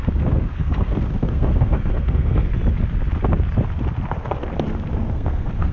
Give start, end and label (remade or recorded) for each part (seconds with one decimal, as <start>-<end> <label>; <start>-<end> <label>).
0.0-2.5 remade; 2.5-4.9 recorded; 4.9-5.7 remade